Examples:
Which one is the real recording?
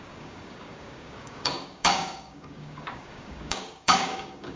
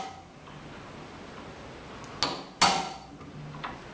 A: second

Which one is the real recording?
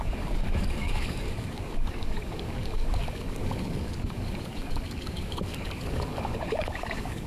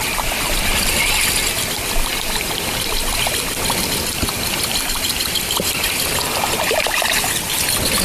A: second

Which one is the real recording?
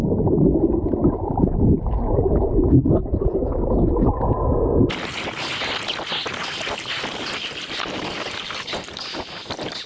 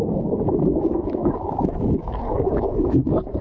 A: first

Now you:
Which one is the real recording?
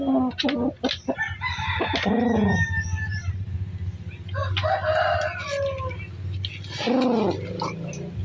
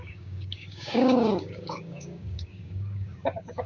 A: first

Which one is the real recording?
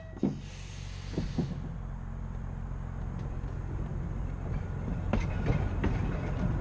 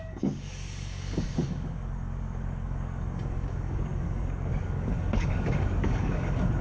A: first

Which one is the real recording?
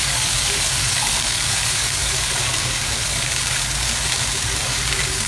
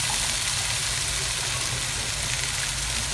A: second